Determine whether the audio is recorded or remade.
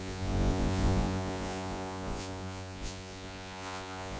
remade